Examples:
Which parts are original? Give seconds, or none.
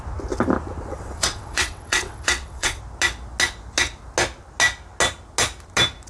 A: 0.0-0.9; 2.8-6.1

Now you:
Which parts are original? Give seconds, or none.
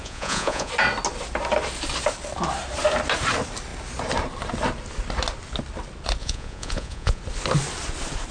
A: 0.7-6.2; 7.2-8.3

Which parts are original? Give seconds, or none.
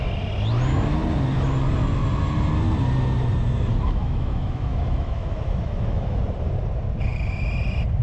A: 0.0-3.7; 6.2-8.0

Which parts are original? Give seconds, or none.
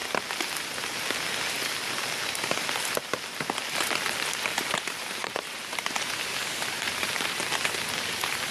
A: 0.0-5.2; 7.4-8.5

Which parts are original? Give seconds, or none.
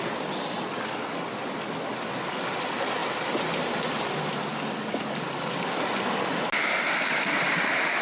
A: 0.0-8.0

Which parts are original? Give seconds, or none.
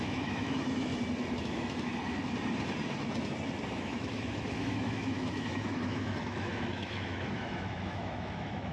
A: 0.9-1.4; 1.9-3.7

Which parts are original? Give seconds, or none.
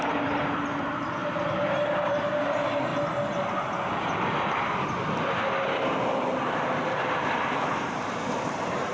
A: 2.9-6.5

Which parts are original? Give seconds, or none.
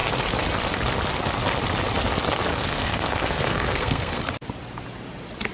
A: 0.0-2.5; 4.2-5.5